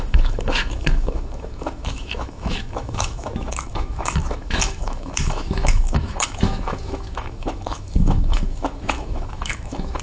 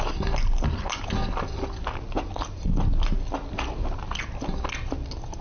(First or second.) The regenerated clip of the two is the first